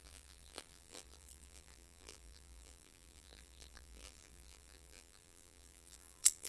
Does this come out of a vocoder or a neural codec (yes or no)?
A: yes